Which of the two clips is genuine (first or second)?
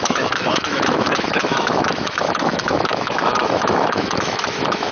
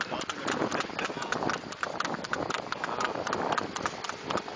second